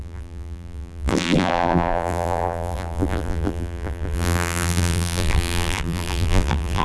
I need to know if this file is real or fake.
fake